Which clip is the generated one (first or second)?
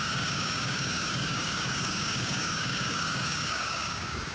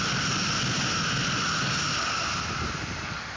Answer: first